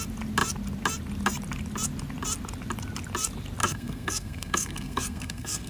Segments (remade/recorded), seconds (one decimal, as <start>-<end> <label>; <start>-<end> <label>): 0.0-3.6 recorded; 3.6-5.7 remade